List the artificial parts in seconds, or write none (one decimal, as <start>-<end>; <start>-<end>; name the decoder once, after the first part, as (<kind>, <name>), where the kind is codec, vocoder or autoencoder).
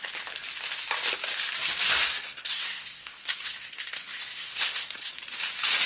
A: 2.1-5.1 (codec, SNAC)